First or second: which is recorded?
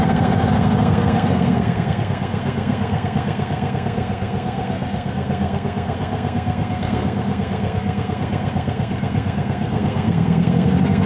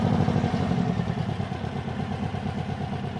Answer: second